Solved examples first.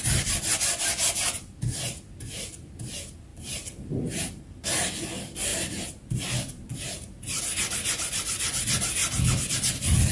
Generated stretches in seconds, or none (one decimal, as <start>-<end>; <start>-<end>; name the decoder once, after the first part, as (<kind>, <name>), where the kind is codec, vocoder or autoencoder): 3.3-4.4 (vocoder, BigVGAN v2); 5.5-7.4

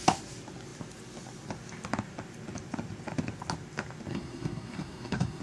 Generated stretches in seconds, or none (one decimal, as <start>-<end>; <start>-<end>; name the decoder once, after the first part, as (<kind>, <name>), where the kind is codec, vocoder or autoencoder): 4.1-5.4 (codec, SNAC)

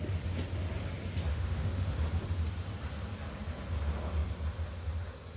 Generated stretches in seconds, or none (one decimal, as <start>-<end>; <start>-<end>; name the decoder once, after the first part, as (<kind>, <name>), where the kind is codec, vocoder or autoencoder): 1.3-1.9 (autoencoder, DAC-VAE)

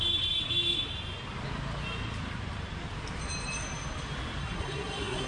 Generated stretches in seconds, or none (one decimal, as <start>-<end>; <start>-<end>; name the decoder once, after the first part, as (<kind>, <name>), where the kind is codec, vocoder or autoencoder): 4.4-5.3 (codec, SNAC)